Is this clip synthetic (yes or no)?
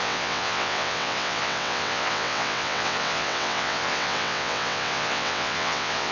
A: yes